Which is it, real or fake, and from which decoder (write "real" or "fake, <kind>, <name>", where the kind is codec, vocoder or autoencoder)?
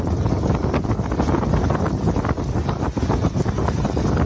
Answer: real